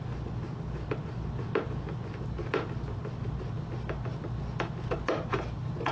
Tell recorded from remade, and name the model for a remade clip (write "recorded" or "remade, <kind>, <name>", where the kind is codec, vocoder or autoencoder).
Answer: recorded